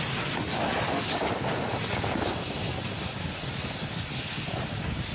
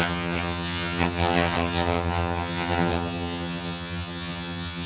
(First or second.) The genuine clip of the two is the first